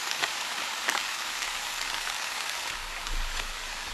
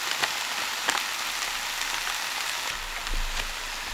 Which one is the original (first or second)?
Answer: second